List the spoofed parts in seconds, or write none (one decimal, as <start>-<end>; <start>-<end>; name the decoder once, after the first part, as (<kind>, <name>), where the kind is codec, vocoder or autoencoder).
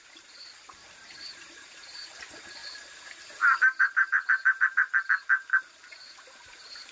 0.0-4.9 (vocoder, BigVGAN v2); 5.6-6.9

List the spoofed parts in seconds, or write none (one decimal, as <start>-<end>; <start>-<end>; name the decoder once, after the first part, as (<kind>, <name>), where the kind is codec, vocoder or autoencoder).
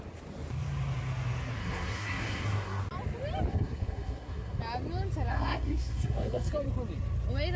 1.6-2.8 (codec, SNAC); 3.5-4.6; 5.3-6.5